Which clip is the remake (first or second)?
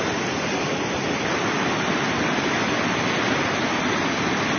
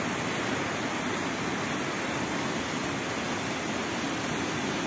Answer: first